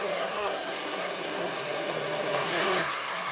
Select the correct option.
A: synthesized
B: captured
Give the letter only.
A